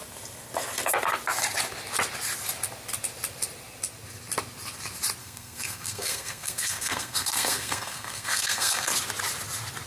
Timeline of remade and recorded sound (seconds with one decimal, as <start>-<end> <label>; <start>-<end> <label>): 0.0-5.2 recorded; 5.2-8.9 remade; 8.9-9.9 recorded